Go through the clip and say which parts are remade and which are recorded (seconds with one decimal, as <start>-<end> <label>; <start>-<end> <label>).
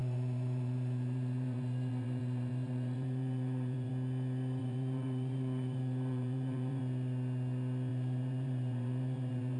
0.0-3.9 remade; 3.9-4.6 recorded; 4.6-6.8 remade; 6.8-7.9 recorded; 7.9-9.6 remade